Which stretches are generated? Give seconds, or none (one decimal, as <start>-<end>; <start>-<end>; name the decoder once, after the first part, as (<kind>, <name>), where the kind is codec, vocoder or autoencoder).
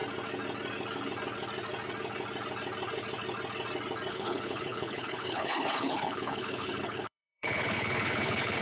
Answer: 4.1-8.6 (codec, HILCodec)